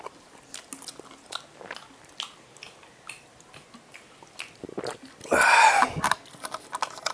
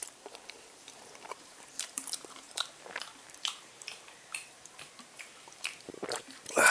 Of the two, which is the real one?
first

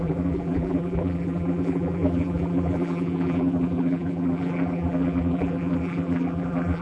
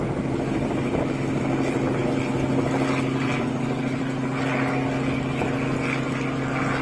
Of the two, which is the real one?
second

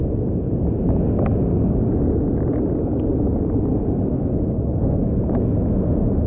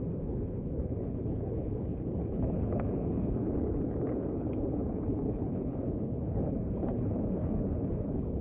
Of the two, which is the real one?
first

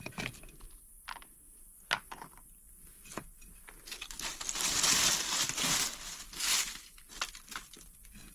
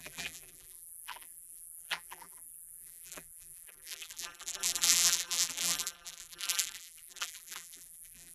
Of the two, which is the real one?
first